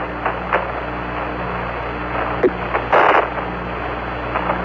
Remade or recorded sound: recorded